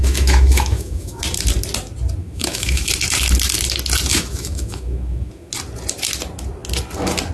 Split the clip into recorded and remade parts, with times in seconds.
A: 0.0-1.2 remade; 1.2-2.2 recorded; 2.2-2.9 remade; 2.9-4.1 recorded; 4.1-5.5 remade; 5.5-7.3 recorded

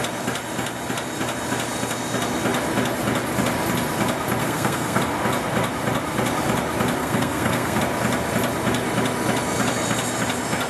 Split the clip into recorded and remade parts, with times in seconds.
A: 0.0-4.4 recorded; 4.4-5.0 remade; 5.0-7.0 recorded; 7.0-7.8 remade; 7.8-10.7 recorded

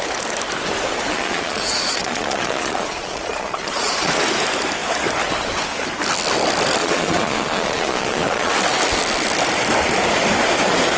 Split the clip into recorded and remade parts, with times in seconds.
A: 0.0-1.1 recorded; 1.1-4.1 remade; 4.1-6.8 recorded; 6.8-8.5 remade; 8.5-11.0 recorded